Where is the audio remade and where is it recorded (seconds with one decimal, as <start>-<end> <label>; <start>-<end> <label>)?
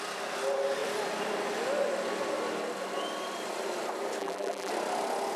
0.0-4.2 recorded; 4.2-4.7 remade; 4.7-5.4 recorded